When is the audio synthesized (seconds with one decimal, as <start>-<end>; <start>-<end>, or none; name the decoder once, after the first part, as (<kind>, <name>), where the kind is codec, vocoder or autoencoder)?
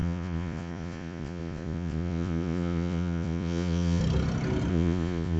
0.0-4.0 (vocoder, Vocos); 4.7-5.4